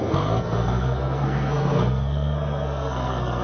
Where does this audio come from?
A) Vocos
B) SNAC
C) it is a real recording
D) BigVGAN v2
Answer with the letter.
B